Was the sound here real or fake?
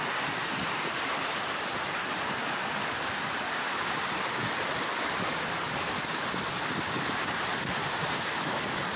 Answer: fake